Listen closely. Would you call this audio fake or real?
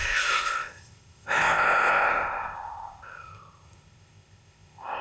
fake